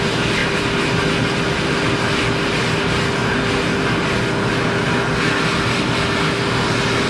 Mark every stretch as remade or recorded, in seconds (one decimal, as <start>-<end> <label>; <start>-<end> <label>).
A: 0.0-7.1 recorded